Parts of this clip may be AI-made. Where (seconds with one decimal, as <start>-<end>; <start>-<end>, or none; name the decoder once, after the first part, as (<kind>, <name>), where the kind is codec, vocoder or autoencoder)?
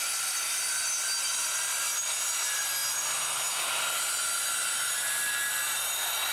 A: none